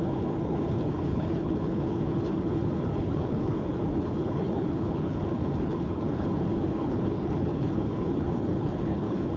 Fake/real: fake